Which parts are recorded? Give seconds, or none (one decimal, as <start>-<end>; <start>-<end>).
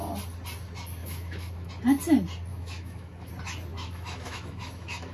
0.0-1.0; 1.7-2.5; 3.3-3.7